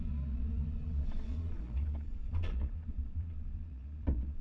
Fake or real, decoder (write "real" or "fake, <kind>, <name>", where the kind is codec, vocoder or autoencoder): fake, vocoder, Vocos